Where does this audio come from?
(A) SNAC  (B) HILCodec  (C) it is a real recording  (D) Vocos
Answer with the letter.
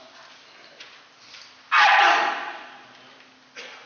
C